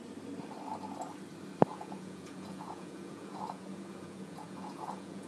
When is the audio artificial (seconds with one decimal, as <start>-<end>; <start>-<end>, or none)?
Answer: 1.7-5.3